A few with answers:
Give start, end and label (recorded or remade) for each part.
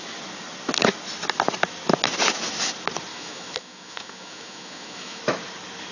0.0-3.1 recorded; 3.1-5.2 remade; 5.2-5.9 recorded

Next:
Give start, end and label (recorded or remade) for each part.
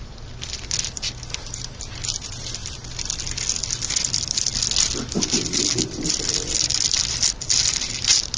0.0-8.4 recorded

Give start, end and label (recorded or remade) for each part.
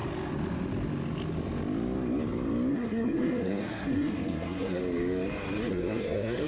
0.0-2.7 recorded; 2.7-4.8 remade; 4.8-5.7 recorded; 5.7-6.5 remade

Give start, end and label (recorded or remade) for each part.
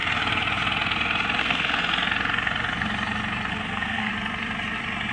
0.0-1.4 recorded; 1.4-1.8 remade; 1.8-3.5 recorded; 3.5-4.1 remade; 4.1-5.1 recorded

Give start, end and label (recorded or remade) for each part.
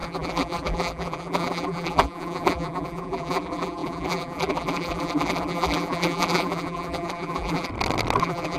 0.0-7.7 remade; 7.7-8.2 recorded; 8.2-8.6 remade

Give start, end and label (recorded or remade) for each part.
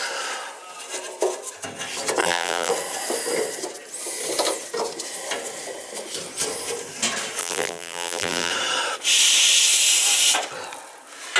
0.0-2.2 recorded; 2.2-2.7 remade; 2.7-7.4 recorded; 7.4-8.5 remade; 8.5-11.4 recorded